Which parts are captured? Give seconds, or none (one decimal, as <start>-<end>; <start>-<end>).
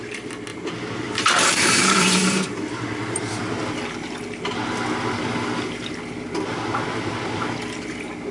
0.0-0.5; 3.2-8.3